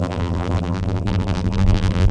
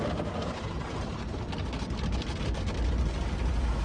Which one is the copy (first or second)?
first